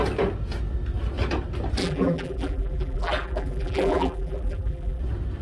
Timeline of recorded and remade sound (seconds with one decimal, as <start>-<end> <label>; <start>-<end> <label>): 0.0-1.8 recorded; 1.8-5.0 remade; 5.0-5.4 recorded